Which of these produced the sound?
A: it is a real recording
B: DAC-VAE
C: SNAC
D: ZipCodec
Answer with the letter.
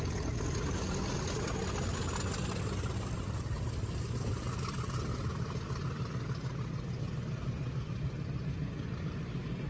A